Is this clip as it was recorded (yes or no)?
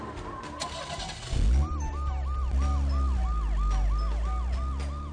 yes